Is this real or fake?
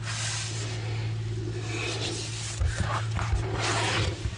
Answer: real